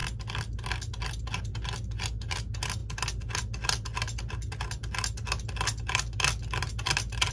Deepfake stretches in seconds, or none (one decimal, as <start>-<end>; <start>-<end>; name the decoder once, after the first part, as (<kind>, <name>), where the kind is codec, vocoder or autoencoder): none